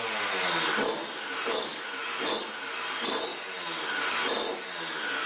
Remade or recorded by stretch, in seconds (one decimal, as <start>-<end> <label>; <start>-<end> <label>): 0.0-1.5 recorded; 1.5-2.4 remade; 2.4-5.3 recorded